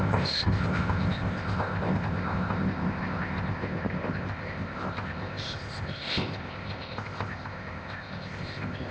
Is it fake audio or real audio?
fake